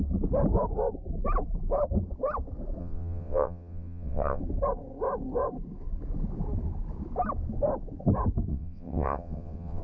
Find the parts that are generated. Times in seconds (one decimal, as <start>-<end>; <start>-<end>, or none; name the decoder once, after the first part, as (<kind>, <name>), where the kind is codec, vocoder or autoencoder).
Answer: 2.8-4.4 (vocoder, WaveNeXt); 8.5-9.8